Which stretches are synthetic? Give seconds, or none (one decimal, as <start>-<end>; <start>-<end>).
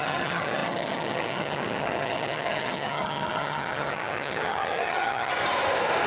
0.0-5.3